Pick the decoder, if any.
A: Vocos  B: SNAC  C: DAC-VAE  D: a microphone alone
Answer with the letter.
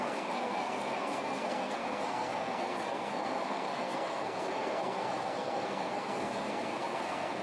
B